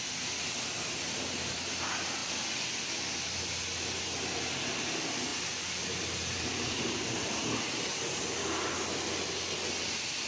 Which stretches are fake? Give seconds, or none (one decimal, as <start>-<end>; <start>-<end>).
5.3-7.7